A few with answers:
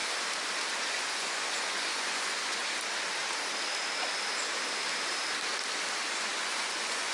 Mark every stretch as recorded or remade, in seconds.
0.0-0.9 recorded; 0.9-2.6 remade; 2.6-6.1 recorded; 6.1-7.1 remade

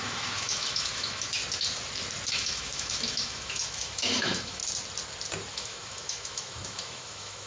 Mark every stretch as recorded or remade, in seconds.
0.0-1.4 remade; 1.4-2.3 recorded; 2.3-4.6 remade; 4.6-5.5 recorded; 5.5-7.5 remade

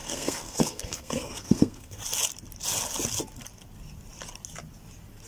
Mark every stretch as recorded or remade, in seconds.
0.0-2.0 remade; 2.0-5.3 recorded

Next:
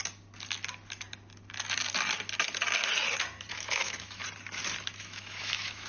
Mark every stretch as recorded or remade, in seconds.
0.0-3.5 recorded; 3.5-4.2 remade; 4.2-5.0 recorded; 5.0-5.9 remade

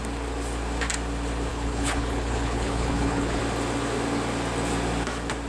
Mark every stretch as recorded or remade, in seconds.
0.0-1.5 recorded; 1.5-3.4 remade; 3.4-5.5 recorded

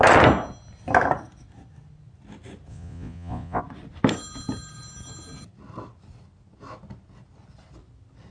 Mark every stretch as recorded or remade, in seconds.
0.0-2.7 recorded; 2.7-3.6 remade; 3.6-8.3 recorded